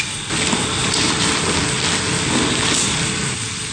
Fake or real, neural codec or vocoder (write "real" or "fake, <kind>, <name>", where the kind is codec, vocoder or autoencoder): real